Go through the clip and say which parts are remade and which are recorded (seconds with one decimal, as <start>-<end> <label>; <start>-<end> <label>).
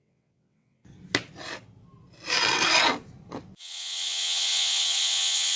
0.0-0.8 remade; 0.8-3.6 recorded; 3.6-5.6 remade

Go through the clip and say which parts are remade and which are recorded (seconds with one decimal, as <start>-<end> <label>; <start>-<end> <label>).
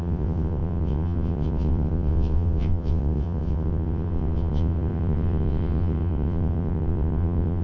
0.0-7.6 remade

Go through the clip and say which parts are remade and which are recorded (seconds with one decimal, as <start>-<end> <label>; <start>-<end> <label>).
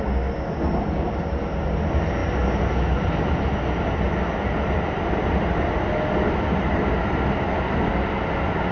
0.0-8.7 recorded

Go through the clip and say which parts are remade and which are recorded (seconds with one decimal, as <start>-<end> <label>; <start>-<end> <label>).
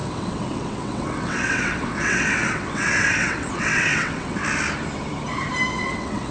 0.0-4.4 remade; 4.4-5.7 recorded; 5.7-6.3 remade